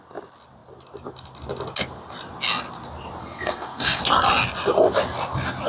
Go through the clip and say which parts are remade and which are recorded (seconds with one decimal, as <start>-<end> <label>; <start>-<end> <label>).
0.0-3.2 recorded; 3.2-4.0 remade; 4.0-5.7 recorded